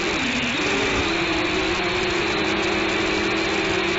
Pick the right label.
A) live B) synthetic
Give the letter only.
A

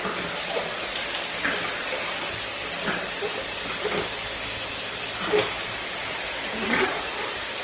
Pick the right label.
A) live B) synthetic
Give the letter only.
A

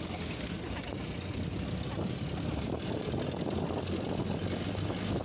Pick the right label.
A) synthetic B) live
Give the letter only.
B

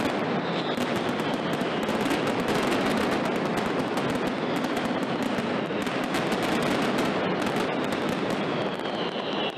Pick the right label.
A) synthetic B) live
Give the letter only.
B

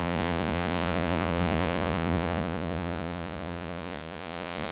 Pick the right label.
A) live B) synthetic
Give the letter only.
B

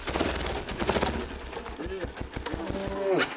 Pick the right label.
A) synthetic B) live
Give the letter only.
B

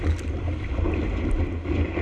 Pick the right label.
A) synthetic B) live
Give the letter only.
B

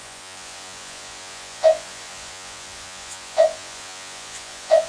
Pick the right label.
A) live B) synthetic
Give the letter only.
B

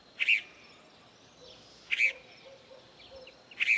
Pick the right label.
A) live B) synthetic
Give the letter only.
A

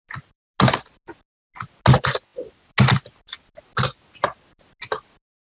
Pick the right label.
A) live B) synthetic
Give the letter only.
A